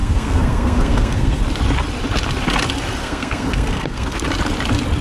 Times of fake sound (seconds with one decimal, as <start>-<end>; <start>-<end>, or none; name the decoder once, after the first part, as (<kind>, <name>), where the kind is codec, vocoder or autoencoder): 0.0-1.4 (codec, SNAC); 3.0-4.2